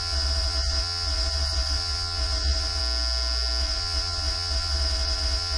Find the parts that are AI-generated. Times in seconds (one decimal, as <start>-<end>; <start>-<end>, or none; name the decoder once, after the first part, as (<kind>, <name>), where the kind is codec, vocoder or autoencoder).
0.0-2.8 (vocoder, Vocos); 3.6-5.6